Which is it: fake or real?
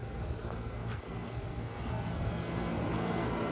fake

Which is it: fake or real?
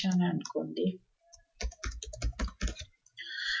real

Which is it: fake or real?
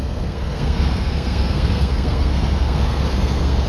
fake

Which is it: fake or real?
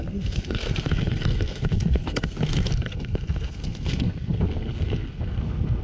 fake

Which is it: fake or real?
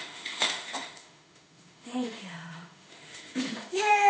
fake